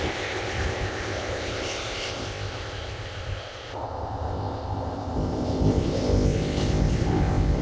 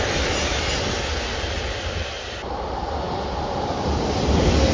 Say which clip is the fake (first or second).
first